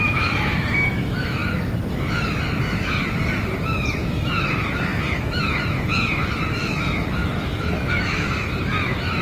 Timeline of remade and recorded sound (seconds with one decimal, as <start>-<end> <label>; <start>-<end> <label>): 0.0-1.4 remade; 1.4-4.0 recorded; 4.0-9.2 remade